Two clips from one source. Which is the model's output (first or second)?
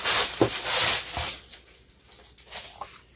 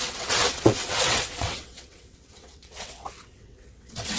second